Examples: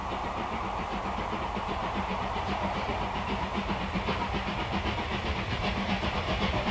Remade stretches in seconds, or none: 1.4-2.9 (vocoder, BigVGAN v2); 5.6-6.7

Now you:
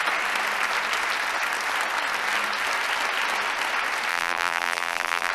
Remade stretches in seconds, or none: 4.1-5.3 (vocoder, BigVGAN v2)

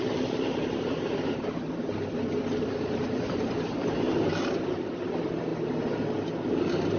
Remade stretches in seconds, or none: 0.0-5.5 (vocoder, BigVGAN v2)

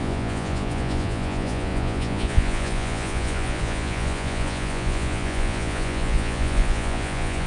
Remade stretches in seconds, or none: 0.0-7.5 (vocoder, Vocos)

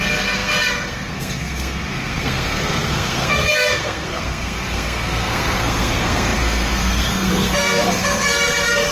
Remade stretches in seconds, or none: 0.0-8.9 (codec, SNAC)